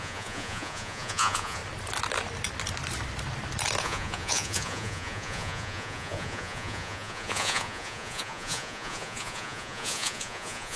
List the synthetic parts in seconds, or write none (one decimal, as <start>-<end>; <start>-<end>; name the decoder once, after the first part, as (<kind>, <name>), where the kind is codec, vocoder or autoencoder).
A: 0.0-1.6 (vocoder, Vocos); 3.8-10.8